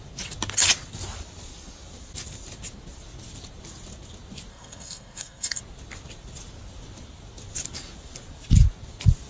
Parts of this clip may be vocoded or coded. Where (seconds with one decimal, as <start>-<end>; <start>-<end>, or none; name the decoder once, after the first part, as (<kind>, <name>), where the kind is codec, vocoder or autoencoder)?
4.5-5.6 (codec, SNAC)